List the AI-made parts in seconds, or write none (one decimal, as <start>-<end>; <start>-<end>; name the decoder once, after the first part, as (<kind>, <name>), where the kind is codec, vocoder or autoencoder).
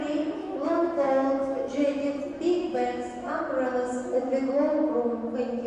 0.4-2.2 (autoencoder, DAC-VAE); 2.6-3.3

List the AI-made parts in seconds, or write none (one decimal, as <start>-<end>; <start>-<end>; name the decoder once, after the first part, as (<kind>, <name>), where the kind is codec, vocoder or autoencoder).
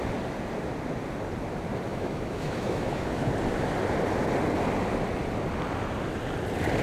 1.9-3.3 (autoencoder, DAC-VAE)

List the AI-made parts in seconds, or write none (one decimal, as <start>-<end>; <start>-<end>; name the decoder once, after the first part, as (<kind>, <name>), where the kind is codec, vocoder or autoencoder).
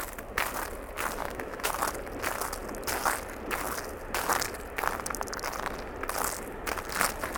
1.2-1.7 (autoencoder, DAC-VAE)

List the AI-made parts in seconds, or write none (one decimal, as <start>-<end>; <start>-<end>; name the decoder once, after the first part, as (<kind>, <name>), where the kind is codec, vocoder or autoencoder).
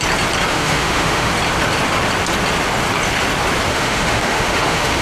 0.5-1.3 (autoencoder, DAC-VAE); 3.7-5.0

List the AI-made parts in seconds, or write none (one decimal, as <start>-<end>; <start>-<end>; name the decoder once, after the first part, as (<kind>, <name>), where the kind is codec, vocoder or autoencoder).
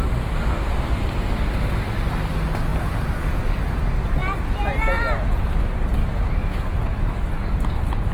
6.0-7.3 (autoencoder, DAC-VAE)